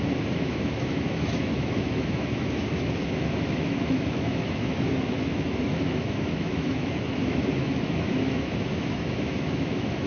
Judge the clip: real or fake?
fake